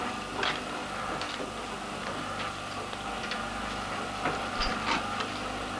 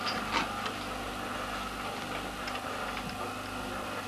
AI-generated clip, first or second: first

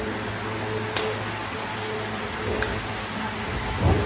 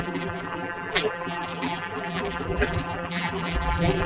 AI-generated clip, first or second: second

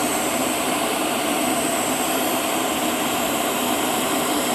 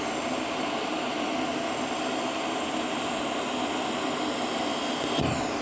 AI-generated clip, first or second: first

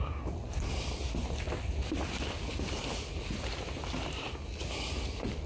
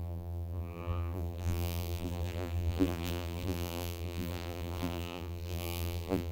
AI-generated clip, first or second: second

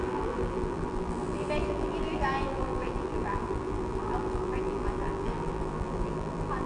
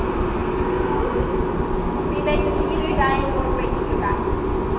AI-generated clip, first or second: first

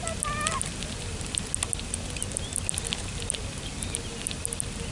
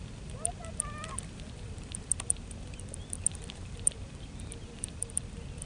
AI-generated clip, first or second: second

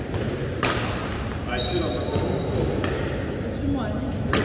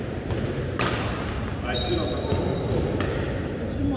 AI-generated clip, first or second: second